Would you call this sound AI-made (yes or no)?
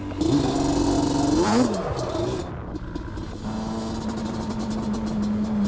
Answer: no